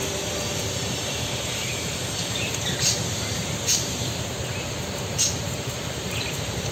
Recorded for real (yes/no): no